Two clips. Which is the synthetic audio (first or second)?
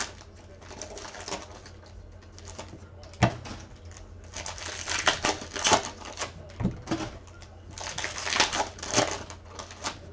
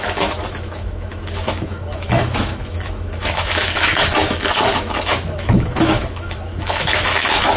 second